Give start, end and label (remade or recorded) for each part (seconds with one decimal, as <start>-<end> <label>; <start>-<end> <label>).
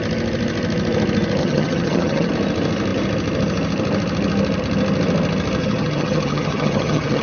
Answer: 0.0-1.4 recorded; 1.4-2.3 remade; 2.3-5.6 recorded; 5.6-7.2 remade